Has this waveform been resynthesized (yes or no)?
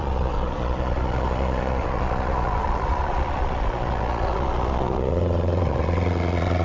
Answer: yes